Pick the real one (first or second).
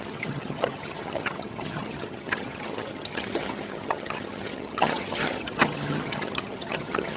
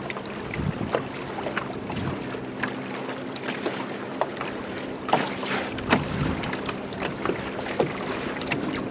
second